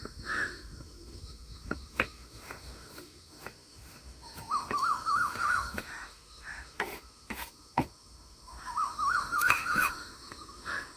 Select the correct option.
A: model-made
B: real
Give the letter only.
A